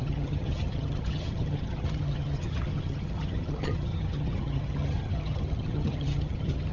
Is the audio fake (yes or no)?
yes